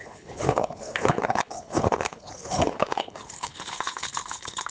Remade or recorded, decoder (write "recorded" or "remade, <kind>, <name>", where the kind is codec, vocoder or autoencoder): remade, codec, HILCodec